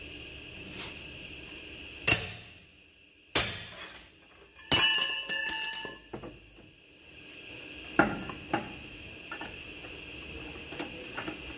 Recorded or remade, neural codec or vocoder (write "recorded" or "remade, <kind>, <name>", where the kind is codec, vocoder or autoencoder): recorded